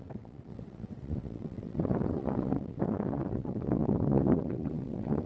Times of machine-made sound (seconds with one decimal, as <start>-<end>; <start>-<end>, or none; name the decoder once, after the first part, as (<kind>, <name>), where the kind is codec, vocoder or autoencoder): 0.0-5.3 (vocoder, WaveNeXt)